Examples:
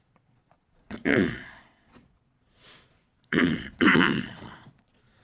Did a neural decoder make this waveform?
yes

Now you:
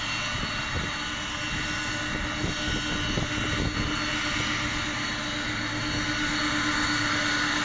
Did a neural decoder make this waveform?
no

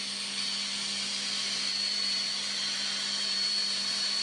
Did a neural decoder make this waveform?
no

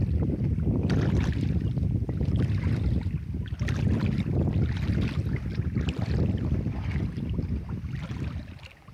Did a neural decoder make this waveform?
no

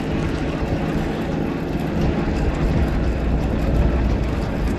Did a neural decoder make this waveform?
no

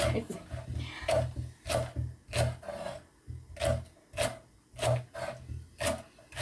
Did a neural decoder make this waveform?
no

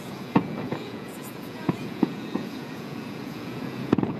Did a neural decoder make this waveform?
yes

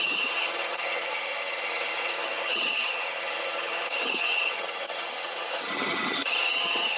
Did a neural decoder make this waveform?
yes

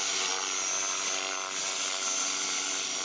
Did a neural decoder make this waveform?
no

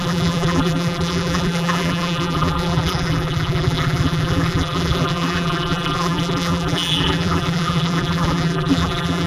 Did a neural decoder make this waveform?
yes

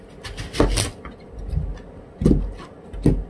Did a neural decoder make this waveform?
no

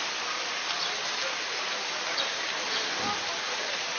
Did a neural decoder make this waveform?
no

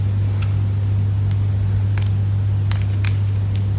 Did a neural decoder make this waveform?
no